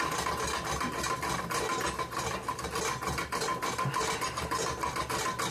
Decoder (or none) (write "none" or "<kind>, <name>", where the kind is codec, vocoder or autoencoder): none